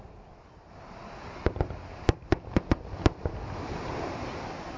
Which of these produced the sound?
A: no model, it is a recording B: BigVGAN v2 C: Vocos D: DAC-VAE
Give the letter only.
A